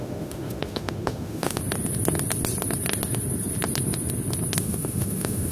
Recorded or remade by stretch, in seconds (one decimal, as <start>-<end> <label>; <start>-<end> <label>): 0.0-1.6 remade; 1.6-4.6 recorded; 4.6-5.5 remade